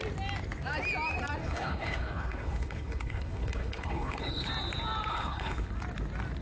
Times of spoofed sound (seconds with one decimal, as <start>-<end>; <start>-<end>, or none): 1.4-4.5; 5.1-5.7